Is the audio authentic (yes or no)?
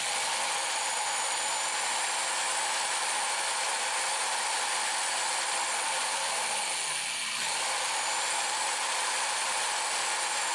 yes